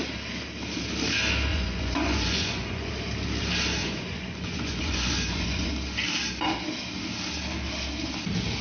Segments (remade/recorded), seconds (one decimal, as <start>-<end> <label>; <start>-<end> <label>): 0.0-1.5 recorded; 1.5-2.9 remade; 2.9-3.8 recorded; 3.8-5.7 remade; 5.7-8.6 recorded